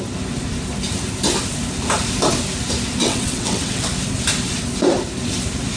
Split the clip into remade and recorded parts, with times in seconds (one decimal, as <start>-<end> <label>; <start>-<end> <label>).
0.0-3.0 recorded; 3.0-3.9 remade; 3.9-5.8 recorded